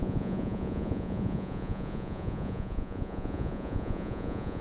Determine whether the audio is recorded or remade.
remade